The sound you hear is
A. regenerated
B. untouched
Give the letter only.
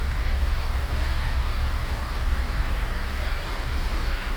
A